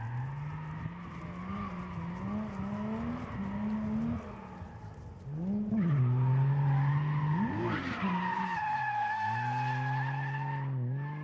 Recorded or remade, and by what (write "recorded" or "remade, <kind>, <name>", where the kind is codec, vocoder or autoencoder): recorded